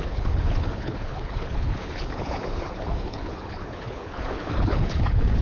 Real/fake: fake